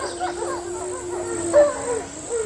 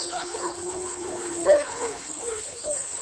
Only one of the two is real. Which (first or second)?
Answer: first